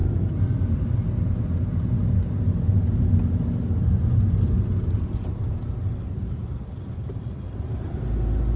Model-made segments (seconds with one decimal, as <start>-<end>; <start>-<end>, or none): none